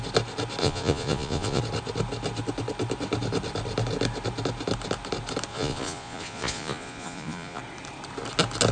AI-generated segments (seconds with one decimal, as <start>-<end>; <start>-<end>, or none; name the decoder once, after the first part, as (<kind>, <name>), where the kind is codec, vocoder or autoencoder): 0.6-1.6 (vocoder, Vocos); 5.5-7.6